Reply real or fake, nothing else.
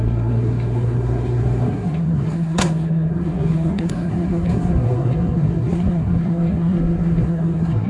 fake